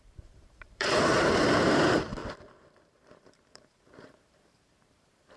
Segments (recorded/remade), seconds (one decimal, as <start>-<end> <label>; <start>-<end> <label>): 0.0-2.2 remade; 2.2-2.8 recorded; 2.8-5.4 remade